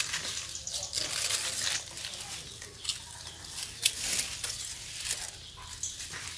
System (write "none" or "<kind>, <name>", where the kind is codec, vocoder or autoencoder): none